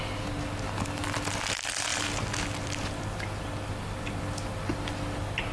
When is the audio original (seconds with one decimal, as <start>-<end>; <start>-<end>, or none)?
0.0-5.5